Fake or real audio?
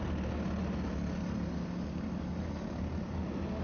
real